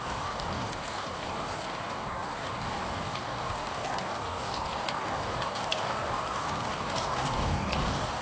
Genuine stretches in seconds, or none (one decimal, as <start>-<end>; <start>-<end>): none